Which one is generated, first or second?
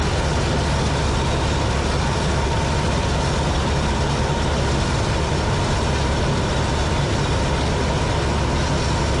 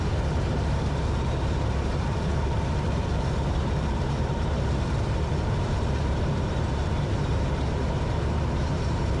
second